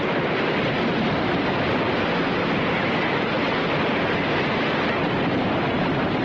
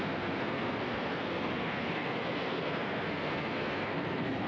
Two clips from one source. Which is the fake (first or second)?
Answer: second